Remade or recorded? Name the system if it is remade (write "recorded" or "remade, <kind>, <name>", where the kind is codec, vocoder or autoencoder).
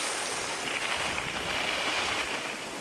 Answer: recorded